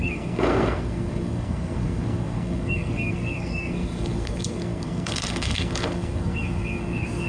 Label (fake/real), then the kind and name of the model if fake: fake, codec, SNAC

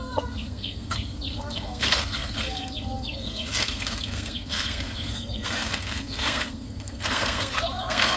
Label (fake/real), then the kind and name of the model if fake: fake, codec, SNAC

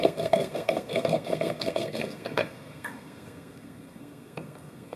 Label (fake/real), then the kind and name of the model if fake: fake, codec, SNAC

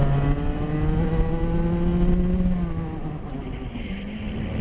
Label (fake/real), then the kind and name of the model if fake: real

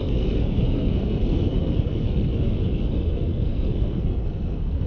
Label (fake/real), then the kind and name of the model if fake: fake, codec, SNAC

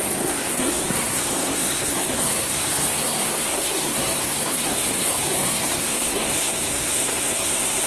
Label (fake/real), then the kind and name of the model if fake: fake, codec, SNAC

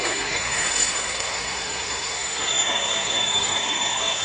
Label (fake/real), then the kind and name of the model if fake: fake, codec, SNAC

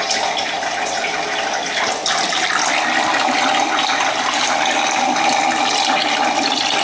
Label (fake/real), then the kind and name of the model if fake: real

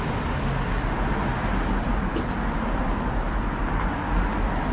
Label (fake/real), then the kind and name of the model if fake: real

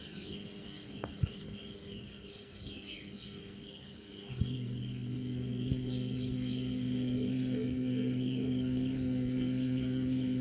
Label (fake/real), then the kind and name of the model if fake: fake, codec, SNAC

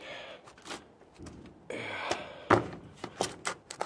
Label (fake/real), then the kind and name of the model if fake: real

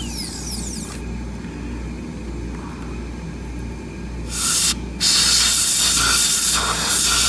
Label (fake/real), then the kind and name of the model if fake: real